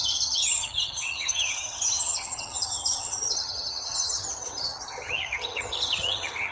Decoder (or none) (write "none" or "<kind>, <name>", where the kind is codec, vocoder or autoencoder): vocoder, HiFi-GAN